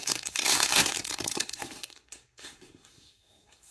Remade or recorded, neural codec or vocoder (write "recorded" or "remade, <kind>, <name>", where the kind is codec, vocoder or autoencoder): remade, codec, SNAC